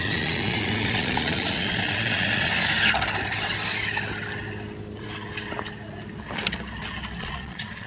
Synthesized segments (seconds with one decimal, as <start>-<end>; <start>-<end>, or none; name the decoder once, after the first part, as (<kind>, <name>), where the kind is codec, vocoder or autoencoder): 0.0-2.5 (vocoder, Vocos); 7.2-7.9